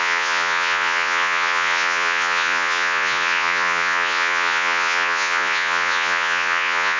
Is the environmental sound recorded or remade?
remade